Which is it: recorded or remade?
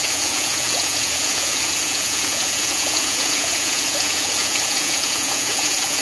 remade